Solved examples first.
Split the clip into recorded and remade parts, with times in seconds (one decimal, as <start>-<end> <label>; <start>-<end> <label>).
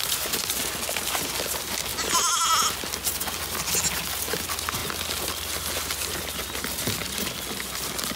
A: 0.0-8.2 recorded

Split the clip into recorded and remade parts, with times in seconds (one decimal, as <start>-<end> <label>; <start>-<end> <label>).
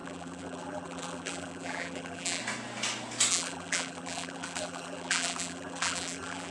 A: 0.0-2.4 remade; 2.4-3.3 recorded; 3.3-6.5 remade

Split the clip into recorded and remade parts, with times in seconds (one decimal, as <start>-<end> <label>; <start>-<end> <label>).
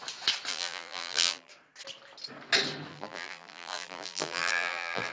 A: 0.0-0.5 recorded; 0.5-1.5 remade; 1.5-2.9 recorded; 2.9-5.1 remade